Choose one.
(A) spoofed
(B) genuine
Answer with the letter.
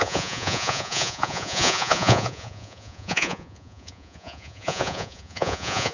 A